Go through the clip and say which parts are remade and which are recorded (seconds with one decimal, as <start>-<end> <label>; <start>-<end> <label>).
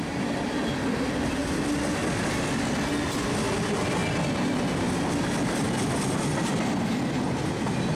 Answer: 0.0-8.0 recorded